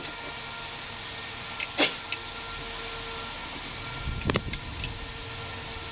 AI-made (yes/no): no